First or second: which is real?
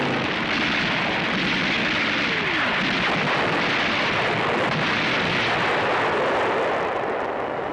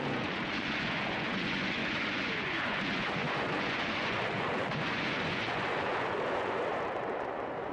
first